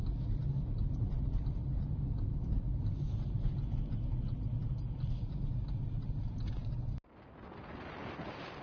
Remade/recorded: recorded